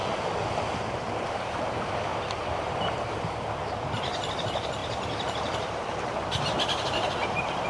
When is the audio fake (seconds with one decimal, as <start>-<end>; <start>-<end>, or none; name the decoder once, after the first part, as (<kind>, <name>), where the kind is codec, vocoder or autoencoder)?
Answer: 1.3-2.1 (vocoder, BigVGAN v2); 4.0-7.7